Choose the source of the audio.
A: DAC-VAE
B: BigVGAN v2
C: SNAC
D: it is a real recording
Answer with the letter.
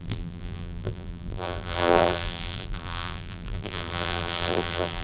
B